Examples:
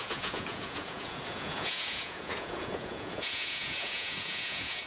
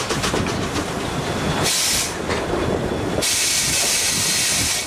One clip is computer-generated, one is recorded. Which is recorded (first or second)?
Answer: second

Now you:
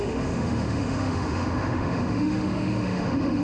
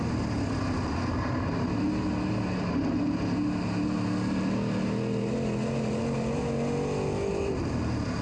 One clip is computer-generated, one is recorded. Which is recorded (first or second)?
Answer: second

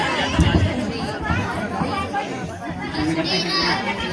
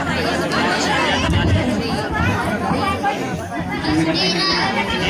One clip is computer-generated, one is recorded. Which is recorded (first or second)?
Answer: second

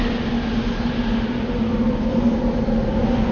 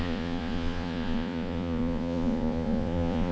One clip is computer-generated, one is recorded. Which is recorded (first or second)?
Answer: first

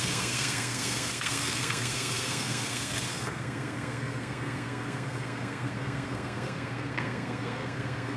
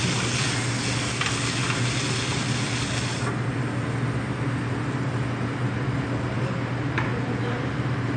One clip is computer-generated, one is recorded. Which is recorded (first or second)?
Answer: second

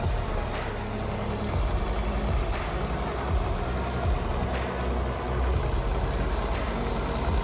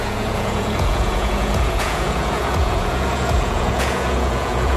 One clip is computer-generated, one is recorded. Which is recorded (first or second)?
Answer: first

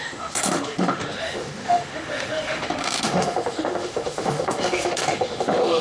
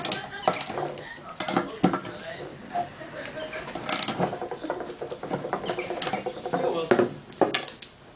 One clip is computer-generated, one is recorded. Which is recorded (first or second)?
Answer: second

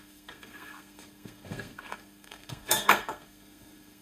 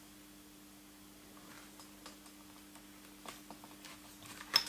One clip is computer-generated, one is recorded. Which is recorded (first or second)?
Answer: second